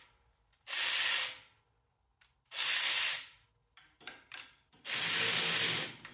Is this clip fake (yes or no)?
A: no